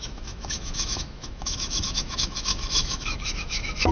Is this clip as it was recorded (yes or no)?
no